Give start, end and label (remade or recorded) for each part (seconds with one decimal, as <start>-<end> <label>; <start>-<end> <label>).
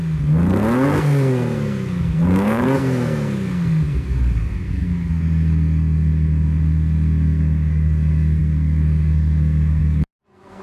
0.0-10.6 remade